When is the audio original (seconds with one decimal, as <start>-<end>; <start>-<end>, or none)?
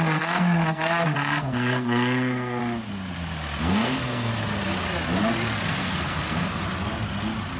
2.6-3.6; 4.3-5.7; 6.6-7.6